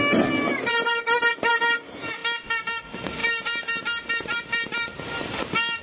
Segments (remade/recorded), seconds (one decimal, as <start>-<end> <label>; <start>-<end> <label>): 0.0-5.8 recorded